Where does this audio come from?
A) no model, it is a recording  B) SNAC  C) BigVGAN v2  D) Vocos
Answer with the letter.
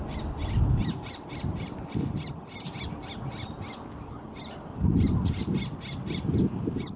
A